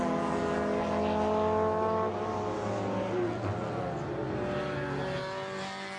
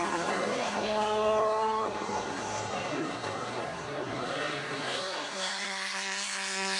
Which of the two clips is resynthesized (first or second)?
second